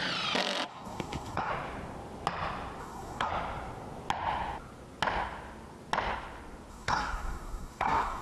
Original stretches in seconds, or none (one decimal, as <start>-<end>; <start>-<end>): 0.0-0.7; 1.5-2.8; 3.3-6.7